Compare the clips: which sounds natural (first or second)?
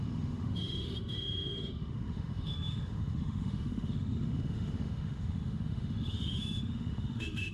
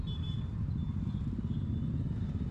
second